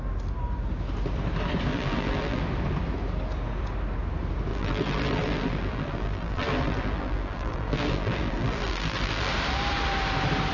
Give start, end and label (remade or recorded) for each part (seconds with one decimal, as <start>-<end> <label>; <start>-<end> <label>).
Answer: 0.0-1.7 recorded; 1.7-2.4 remade; 2.4-4.5 recorded; 4.5-9.3 remade; 9.3-10.5 recorded